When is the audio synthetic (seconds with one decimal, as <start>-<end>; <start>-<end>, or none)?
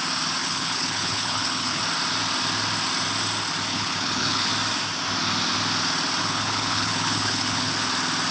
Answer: 0.4-1.8; 3.7-4.5; 6.2-7.7